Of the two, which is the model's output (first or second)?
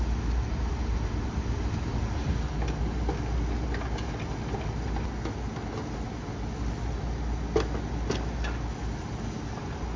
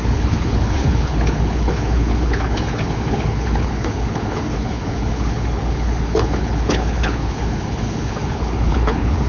second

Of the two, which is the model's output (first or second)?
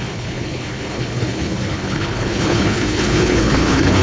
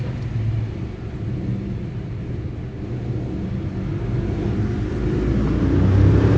first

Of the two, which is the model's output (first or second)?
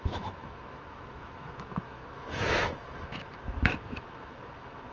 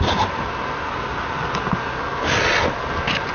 first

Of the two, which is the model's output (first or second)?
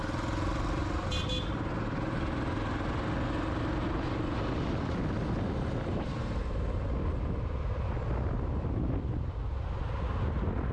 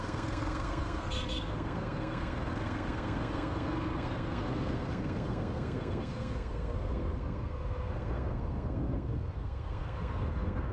second